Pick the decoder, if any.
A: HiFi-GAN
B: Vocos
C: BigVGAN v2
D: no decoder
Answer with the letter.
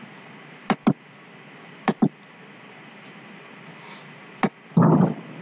D